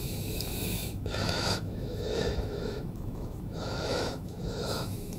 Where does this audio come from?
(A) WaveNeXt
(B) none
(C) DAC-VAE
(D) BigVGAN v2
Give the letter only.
C